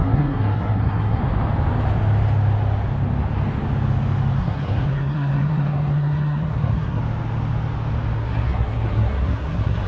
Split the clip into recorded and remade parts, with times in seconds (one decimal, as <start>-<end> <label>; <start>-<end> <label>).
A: 0.0-1.2 remade; 1.2-4.4 recorded; 4.4-7.0 remade; 7.0-8.2 recorded; 8.2-9.9 remade

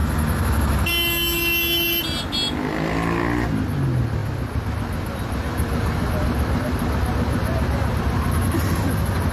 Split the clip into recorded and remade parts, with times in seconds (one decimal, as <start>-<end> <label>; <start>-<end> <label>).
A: 0.0-9.3 recorded

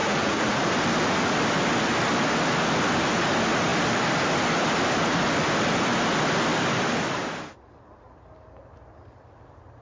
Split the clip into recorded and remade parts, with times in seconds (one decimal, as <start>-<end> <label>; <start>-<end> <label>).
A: 0.0-0.7 remade; 0.7-9.8 recorded

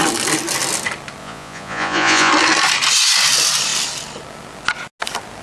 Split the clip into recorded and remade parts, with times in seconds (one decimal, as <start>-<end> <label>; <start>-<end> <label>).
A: 0.0-1.2 recorded; 1.2-2.3 remade; 2.3-5.4 recorded

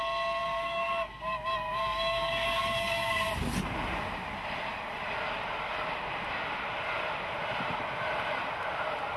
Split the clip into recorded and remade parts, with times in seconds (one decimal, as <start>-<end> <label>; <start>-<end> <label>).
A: 0.0-0.4 recorded; 0.4-3.3 remade; 3.3-9.2 recorded

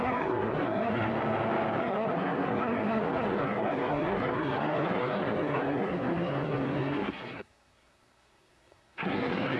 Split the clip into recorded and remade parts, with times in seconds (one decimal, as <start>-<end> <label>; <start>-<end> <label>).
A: 0.0-1.1 remade; 1.1-1.8 recorded; 1.8-9.6 remade